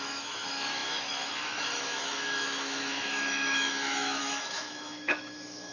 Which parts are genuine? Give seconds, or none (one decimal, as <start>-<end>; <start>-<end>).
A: none